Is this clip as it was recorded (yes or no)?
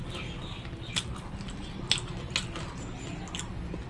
yes